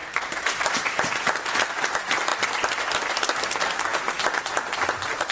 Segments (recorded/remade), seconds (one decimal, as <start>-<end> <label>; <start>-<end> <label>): 0.0-1.2 remade; 1.2-5.3 recorded